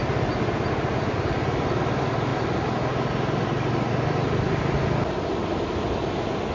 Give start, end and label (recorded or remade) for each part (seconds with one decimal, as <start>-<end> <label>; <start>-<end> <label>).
0.0-6.5 recorded